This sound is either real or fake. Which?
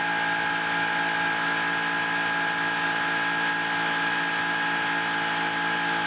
real